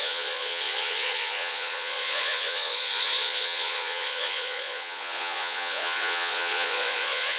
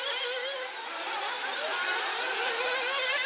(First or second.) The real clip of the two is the second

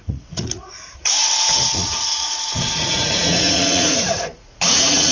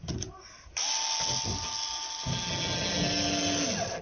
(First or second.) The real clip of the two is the second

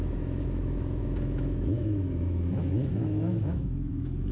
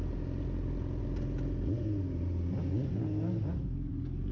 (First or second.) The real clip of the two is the second